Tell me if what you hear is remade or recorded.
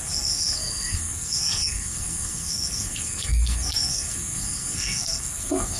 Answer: remade